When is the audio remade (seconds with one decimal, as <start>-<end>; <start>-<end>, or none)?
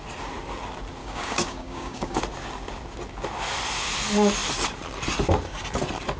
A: 1.0-2.2